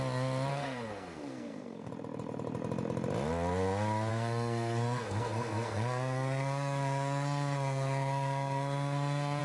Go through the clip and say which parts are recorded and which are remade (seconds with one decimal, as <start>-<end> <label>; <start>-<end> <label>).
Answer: 0.0-0.5 recorded; 0.5-1.9 remade; 1.9-4.1 recorded; 4.1-9.4 remade